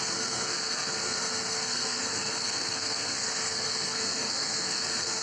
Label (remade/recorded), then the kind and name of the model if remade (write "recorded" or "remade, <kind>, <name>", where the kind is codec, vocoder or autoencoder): remade, codec, SNAC